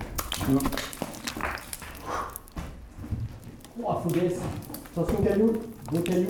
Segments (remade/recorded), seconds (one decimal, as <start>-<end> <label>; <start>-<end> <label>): 0.0-6.3 recorded